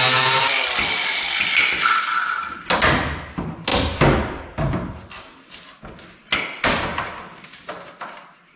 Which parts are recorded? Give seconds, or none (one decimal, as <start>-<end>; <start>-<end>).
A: 0.0-8.6